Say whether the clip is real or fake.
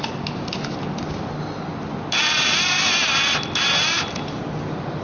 real